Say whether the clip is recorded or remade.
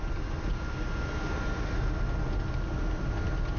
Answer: recorded